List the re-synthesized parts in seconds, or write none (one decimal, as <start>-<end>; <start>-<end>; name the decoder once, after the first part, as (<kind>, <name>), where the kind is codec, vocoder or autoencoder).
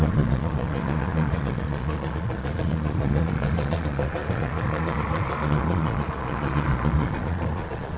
0.0-8.0 (vocoder, Vocos)